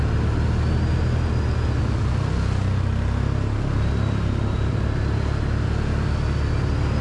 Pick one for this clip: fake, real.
real